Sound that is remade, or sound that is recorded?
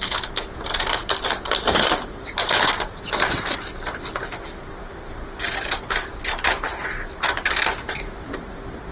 recorded